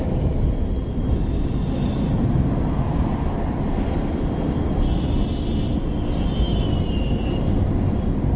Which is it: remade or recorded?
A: recorded